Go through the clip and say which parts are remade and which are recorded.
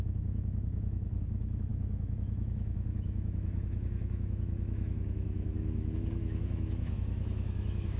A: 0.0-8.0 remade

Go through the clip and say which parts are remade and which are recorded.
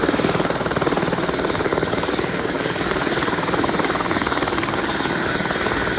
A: 0.0-1.7 recorded; 1.7-5.3 remade; 5.3-6.0 recorded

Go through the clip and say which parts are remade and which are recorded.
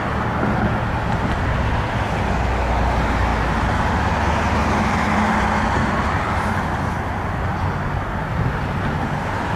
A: 0.0-9.6 recorded